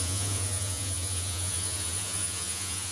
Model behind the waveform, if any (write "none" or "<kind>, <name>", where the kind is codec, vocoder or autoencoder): vocoder, Vocos